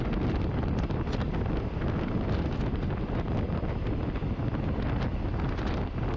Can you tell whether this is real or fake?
real